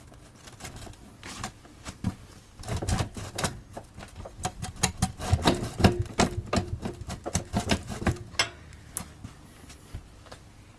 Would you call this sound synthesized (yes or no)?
no